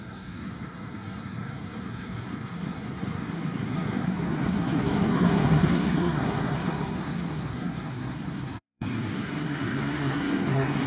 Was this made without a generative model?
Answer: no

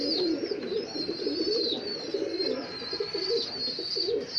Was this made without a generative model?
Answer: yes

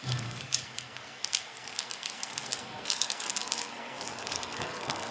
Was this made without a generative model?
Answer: no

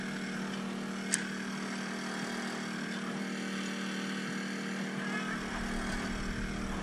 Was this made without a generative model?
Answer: yes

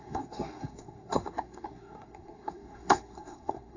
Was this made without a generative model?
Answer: no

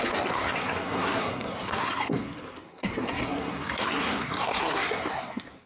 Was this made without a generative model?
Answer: no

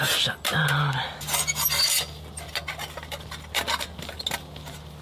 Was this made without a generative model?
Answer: yes